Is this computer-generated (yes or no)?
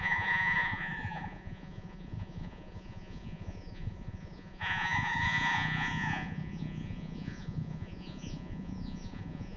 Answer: yes